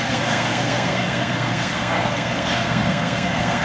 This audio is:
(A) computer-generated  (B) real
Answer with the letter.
A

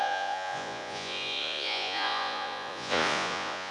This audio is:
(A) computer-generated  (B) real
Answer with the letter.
A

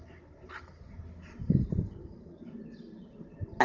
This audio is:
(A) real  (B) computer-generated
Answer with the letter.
A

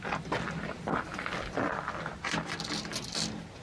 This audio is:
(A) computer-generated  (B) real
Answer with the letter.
B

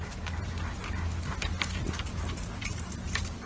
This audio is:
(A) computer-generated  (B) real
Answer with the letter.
B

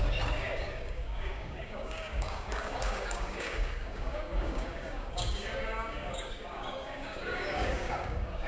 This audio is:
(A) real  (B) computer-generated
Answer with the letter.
B